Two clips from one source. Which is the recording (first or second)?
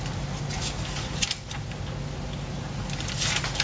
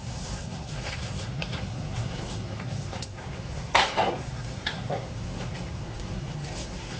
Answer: first